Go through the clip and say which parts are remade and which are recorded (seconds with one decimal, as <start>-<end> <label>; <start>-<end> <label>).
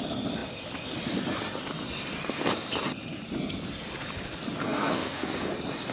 0.0-4.6 recorded; 4.6-5.5 remade; 5.5-5.9 recorded